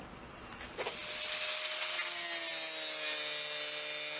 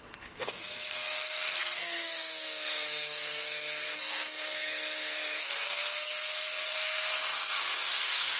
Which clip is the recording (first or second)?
first